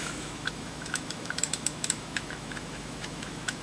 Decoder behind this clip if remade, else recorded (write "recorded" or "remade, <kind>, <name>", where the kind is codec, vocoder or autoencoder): remade, autoencoder, DAC-VAE